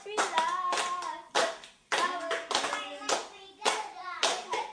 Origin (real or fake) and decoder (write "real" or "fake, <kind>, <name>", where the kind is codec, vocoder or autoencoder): real